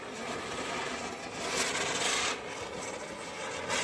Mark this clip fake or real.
real